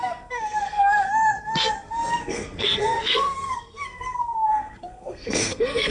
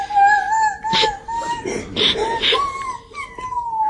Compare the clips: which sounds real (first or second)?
second